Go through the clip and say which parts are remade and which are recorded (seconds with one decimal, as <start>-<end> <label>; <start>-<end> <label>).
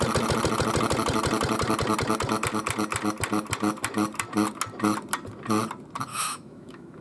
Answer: 0.0-6.1 recorded; 6.1-7.0 remade